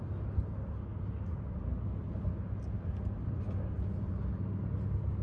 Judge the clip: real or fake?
real